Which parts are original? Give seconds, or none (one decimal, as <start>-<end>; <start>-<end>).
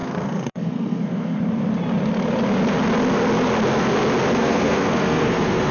1.4-4.4